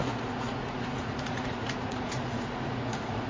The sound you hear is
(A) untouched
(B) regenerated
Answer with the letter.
B